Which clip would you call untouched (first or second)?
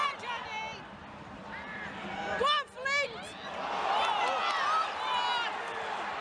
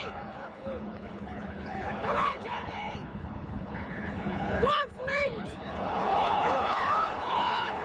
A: first